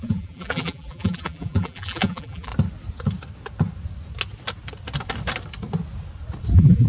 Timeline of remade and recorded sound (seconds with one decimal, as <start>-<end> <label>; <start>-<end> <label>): 0.0-2.5 remade; 2.5-6.5 recorded; 6.5-6.9 remade